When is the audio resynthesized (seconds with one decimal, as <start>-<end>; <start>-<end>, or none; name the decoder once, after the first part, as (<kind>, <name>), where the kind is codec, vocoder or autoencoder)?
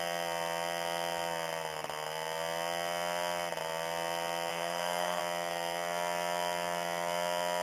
4.5-5.2 (codec, SNAC)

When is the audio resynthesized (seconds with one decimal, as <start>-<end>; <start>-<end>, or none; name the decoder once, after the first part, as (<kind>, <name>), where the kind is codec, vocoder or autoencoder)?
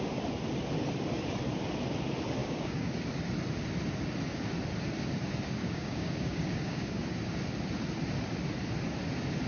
2.4-3.1 (codec, DAC); 5.6-7.0